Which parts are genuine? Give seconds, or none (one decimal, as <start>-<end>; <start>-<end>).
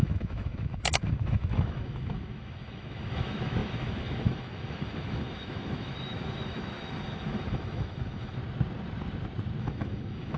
8.4-9.6